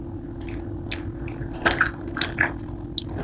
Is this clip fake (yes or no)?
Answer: no